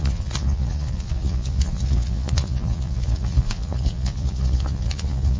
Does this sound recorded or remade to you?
remade